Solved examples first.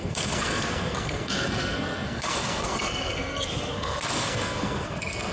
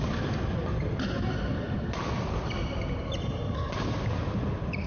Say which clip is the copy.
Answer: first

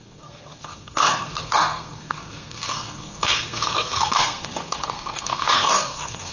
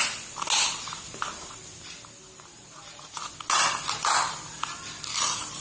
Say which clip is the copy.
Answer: first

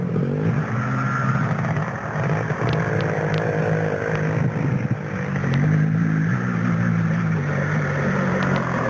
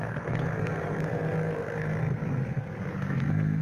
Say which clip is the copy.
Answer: second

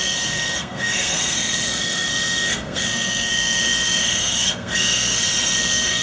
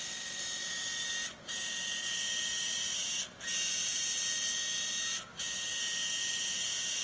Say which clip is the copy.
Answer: first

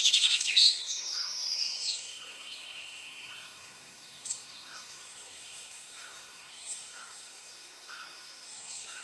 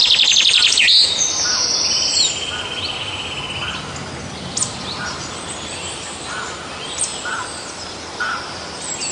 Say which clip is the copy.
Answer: first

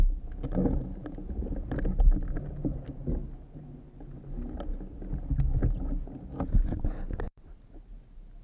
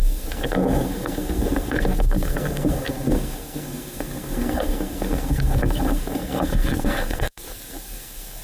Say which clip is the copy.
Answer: second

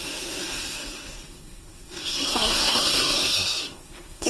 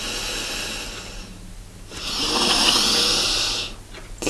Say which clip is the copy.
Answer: first